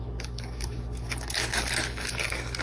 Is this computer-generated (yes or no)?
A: yes